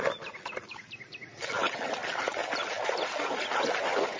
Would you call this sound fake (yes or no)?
no